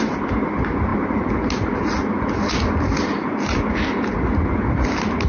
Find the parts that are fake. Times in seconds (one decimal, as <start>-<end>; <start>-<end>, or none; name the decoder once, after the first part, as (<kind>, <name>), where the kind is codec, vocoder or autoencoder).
none